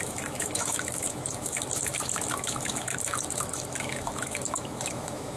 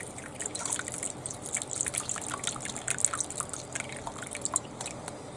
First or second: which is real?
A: second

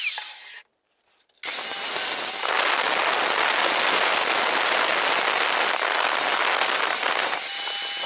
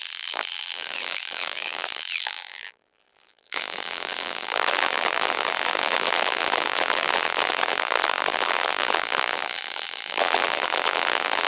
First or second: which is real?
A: first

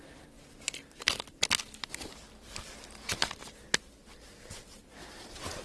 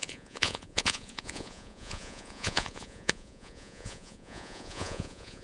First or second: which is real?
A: first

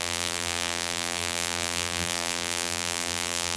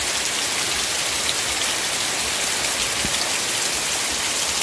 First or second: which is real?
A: second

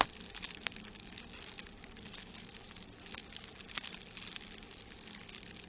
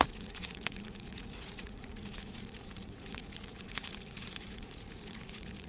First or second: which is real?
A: first